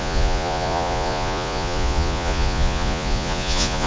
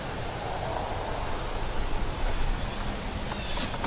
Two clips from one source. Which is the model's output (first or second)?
first